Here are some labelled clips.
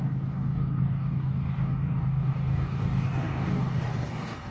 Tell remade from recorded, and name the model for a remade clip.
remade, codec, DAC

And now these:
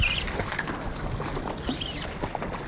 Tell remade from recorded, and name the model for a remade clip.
recorded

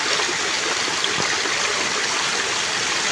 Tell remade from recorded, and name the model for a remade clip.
recorded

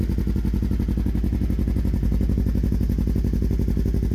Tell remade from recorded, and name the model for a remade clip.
recorded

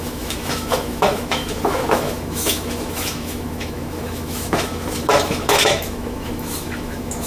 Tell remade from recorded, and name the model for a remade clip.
remade, autoencoder, DAC-VAE